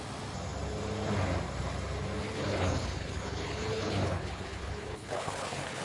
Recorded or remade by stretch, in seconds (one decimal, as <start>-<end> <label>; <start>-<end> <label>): 0.0-2.2 recorded; 2.2-5.8 remade